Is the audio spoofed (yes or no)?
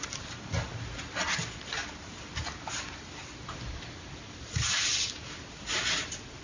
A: no